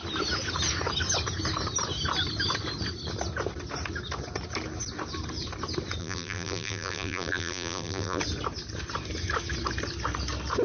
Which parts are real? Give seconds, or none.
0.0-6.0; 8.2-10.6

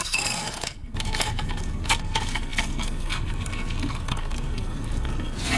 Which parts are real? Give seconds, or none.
none

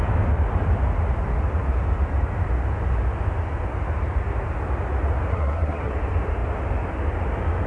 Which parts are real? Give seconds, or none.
0.0-5.3; 5.9-7.7